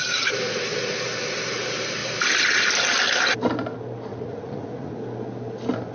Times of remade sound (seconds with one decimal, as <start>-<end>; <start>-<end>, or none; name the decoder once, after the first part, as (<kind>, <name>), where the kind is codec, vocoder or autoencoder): 4.1-4.9 (vocoder, Vocos)